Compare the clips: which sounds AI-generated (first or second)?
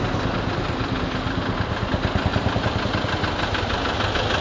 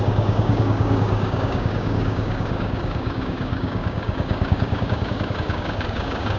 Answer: second